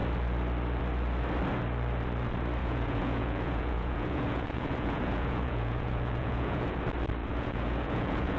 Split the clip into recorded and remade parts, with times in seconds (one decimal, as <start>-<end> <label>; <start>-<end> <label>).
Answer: 0.0-2.6 recorded; 2.6-6.8 remade; 6.8-7.2 recorded; 7.2-8.4 remade